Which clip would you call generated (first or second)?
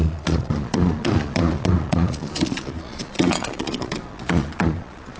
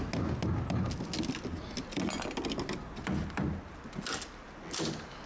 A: first